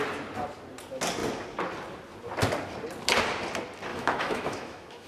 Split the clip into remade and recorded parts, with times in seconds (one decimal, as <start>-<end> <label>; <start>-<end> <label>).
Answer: 0.0-3.9 recorded; 3.9-5.1 remade